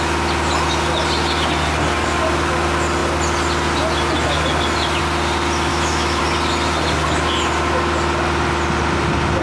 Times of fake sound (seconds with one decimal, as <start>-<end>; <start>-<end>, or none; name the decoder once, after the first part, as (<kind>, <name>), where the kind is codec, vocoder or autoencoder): 5.7-6.2 (autoencoder, DAC-VAE)